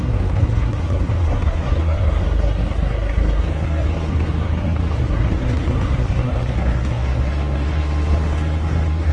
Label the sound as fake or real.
fake